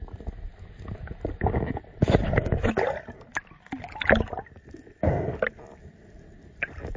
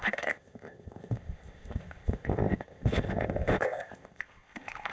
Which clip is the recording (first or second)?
first